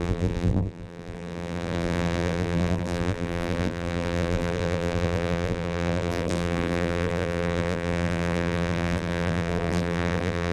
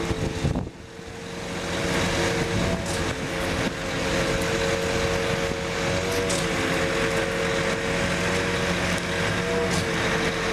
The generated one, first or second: first